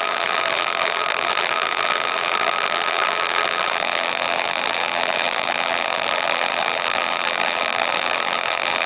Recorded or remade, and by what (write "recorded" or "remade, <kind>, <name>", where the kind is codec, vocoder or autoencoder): remade, vocoder, BigVGAN v2